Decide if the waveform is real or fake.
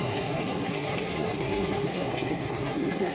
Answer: fake